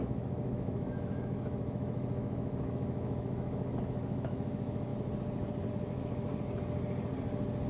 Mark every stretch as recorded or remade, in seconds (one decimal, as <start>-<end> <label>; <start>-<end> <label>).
0.0-4.9 remade; 4.9-5.7 recorded; 5.7-6.3 remade; 6.3-7.7 recorded